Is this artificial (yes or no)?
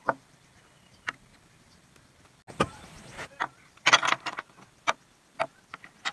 no